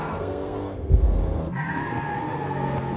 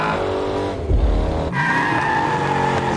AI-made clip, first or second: first